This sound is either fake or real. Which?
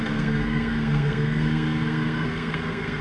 fake